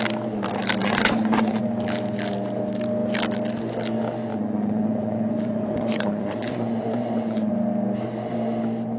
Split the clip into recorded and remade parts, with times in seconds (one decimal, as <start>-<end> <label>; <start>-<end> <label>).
0.0-0.8 recorded; 0.8-1.6 remade; 1.6-4.3 recorded; 4.3-7.5 remade; 7.5-9.0 recorded